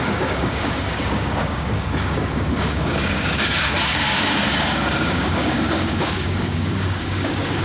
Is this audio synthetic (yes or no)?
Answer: yes